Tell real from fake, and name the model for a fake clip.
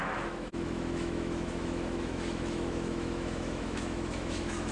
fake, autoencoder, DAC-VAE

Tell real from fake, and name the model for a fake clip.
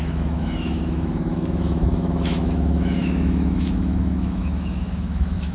fake, autoencoder, DAC-VAE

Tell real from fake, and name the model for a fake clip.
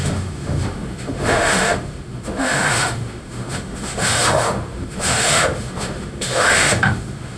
fake, autoencoder, DAC-VAE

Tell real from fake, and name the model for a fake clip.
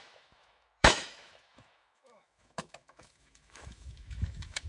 fake, autoencoder, DAC-VAE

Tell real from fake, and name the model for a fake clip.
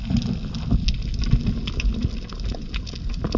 real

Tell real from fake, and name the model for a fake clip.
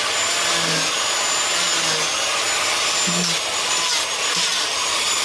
real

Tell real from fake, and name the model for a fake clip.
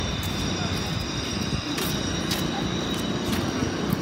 real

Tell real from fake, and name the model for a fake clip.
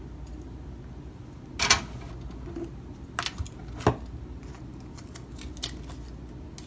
real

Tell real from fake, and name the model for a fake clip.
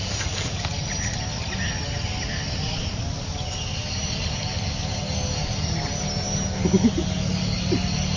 real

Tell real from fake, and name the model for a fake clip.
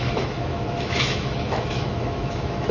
fake, autoencoder, DAC-VAE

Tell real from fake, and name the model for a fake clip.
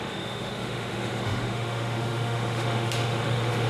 fake, autoencoder, DAC-VAE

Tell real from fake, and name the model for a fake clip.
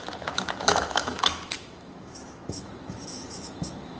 fake, autoencoder, DAC-VAE